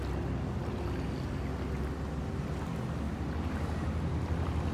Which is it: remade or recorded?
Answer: recorded